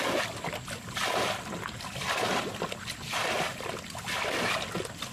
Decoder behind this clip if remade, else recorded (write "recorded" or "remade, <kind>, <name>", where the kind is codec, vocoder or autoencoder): recorded